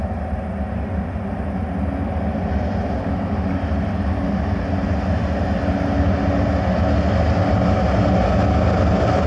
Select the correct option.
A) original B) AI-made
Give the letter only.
A